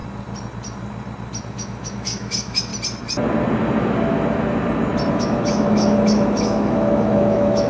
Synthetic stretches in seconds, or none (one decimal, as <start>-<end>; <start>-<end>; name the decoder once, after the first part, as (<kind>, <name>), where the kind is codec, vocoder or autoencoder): 1.5-2.7 (autoencoder, DAC-VAE); 5.1-7.7